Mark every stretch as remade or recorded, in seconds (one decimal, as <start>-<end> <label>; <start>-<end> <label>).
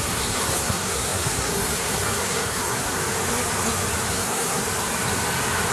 0.0-3.0 remade; 3.0-4.1 recorded; 4.1-4.6 remade; 4.6-5.7 recorded